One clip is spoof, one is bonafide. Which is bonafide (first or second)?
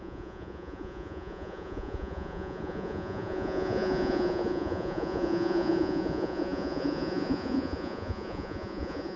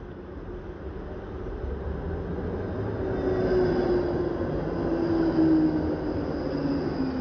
second